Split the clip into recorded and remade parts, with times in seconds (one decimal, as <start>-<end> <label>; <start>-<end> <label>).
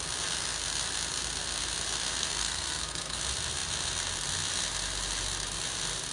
0.0-2.2 recorded; 2.2-3.2 remade; 3.2-6.1 recorded